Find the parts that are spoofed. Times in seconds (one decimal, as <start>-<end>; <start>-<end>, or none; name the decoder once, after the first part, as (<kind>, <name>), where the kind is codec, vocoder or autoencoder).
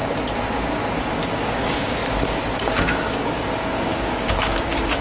1.0-2.0 (codec, DAC); 2.6-5.0